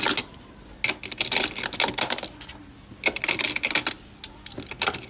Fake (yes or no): no